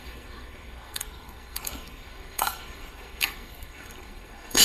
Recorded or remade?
remade